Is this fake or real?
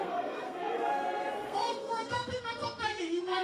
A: fake